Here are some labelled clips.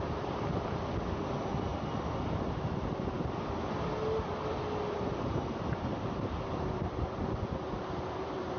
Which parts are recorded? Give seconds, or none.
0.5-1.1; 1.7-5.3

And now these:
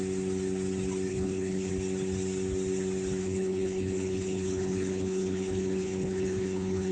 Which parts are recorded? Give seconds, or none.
0.0-1.1; 1.7-3.2

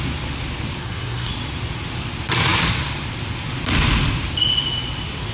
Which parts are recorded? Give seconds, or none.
0.0-0.8; 1.3-5.3